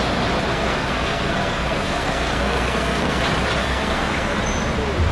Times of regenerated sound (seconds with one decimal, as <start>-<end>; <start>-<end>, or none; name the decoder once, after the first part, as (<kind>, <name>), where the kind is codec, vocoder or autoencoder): 0.5-3.2 (codec, SNAC); 3.6-4.4